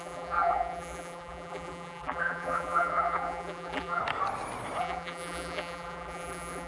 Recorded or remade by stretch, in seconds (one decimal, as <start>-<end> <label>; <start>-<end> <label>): 0.0-4.0 remade; 4.0-4.8 recorded; 4.8-6.7 remade